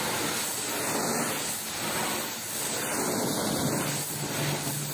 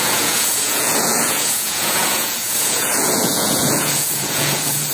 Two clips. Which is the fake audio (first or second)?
second